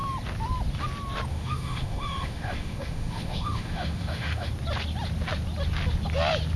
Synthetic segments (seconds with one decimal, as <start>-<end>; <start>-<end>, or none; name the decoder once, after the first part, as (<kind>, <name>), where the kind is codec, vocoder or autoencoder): 1.3-4.5 (autoencoder, DAC-VAE)